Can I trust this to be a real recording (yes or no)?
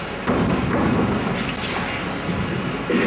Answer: yes